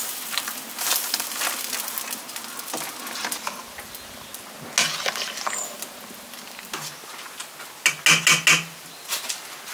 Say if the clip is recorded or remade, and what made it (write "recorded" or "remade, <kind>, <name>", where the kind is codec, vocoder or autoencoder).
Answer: recorded